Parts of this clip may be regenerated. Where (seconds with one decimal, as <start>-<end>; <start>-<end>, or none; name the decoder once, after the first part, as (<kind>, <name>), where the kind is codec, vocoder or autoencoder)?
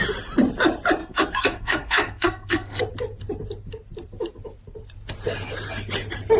1.0-2.8 (codec, SNAC)